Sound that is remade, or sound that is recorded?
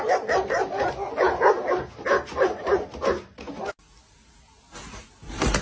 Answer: recorded